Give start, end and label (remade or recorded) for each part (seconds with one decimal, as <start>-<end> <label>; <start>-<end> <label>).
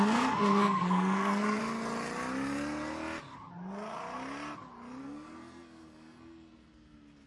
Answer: 0.0-1.6 remade; 1.6-5.0 recorded; 5.0-7.3 remade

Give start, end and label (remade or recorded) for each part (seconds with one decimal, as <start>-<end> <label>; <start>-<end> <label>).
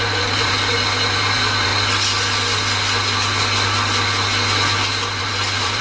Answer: 0.0-1.7 remade; 1.7-5.2 recorded; 5.2-5.8 remade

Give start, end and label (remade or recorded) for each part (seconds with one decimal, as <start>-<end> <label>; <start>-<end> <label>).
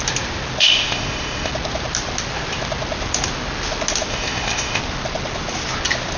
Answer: 0.0-0.6 recorded; 0.6-1.5 remade; 1.5-4.1 recorded; 4.1-4.8 remade; 4.8-6.2 recorded